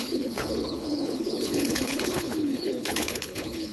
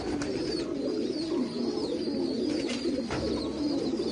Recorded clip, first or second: second